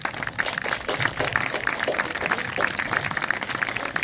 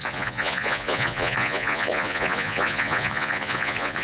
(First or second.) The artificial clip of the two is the second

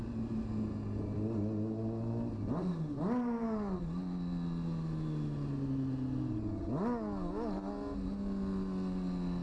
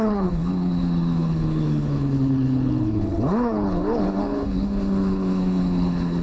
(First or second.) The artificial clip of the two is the second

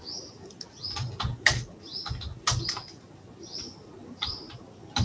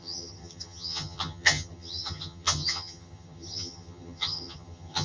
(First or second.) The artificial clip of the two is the second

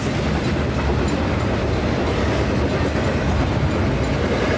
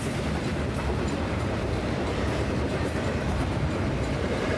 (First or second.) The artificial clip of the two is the second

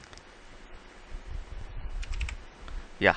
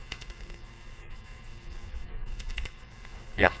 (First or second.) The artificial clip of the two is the second